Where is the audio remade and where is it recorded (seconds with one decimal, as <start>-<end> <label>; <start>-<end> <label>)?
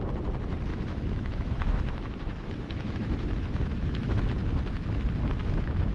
0.0-0.7 recorded; 0.7-4.2 remade; 4.2-5.4 recorded; 5.4-5.9 remade